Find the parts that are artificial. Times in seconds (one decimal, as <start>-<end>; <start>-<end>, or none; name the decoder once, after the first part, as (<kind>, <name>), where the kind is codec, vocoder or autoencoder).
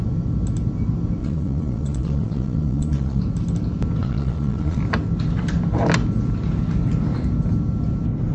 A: 1.2-3.2 (vocoder, Vocos); 4.0-4.8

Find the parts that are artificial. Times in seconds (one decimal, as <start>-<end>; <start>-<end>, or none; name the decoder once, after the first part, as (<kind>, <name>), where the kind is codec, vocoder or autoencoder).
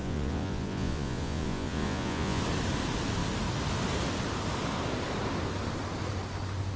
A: 0.0-2.4 (vocoder, Vocos)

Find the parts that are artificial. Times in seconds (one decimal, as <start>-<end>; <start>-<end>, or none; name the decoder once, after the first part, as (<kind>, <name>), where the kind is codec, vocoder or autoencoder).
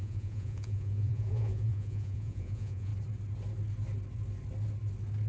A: 0.0-2.9 (vocoder, Vocos)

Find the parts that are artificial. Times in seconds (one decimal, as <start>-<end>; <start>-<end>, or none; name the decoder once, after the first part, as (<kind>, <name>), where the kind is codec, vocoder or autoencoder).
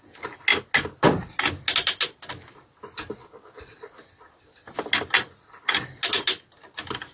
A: none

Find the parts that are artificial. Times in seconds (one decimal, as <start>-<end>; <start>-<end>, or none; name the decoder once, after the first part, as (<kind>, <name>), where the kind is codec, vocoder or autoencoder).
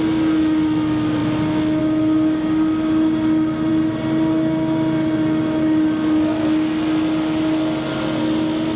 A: none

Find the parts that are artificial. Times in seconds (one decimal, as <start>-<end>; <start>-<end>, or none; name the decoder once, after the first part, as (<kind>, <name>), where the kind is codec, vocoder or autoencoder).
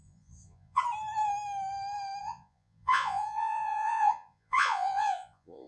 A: 0.0-0.8 (vocoder, Vocos); 2.2-5.7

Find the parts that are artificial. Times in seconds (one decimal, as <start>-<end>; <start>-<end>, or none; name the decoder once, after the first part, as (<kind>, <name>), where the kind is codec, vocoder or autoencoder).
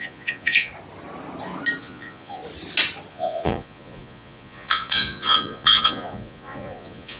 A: 0.0-0.7 (vocoder, Vocos); 1.8-2.4; 3.1-7.2